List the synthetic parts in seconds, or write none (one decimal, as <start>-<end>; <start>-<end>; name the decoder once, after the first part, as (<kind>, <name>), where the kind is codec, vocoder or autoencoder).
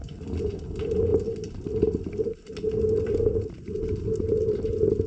none